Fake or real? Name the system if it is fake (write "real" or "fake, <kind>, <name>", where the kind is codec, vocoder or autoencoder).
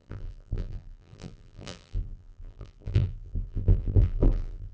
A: fake, vocoder, BigVGAN v2